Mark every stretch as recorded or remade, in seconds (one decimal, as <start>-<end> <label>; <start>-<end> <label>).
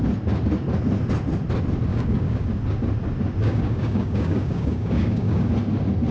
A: 0.0-1.9 recorded; 1.9-2.5 remade; 2.5-3.4 recorded; 3.4-5.5 remade; 5.5-6.1 recorded